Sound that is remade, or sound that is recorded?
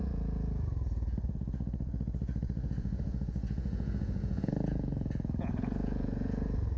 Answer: remade